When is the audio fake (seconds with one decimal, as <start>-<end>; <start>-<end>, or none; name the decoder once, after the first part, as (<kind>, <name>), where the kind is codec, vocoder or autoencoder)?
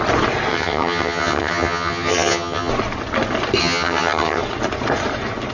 0.5-2.7 (vocoder, HiFi-GAN); 3.6-4.4